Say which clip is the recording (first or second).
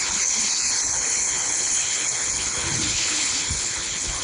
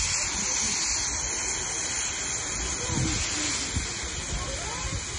second